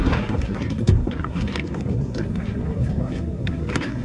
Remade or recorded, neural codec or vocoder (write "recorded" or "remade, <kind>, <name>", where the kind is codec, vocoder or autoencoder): remade, codec, SNAC